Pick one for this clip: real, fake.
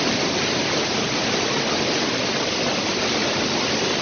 real